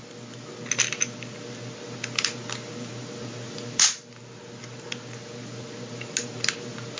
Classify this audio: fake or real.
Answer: real